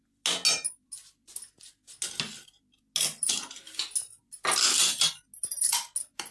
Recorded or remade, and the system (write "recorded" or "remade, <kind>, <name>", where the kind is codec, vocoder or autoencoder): recorded